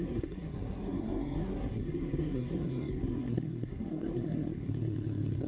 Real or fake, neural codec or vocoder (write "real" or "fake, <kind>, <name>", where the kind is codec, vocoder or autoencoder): fake, codec, SNAC